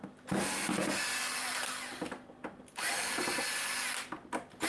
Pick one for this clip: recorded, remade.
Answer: recorded